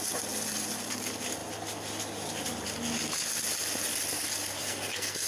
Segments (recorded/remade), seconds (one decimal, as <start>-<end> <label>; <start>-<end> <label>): 0.0-4.6 recorded; 4.6-5.3 remade